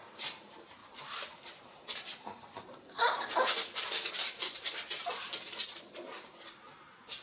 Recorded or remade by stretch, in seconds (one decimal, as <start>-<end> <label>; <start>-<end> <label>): 0.0-7.2 remade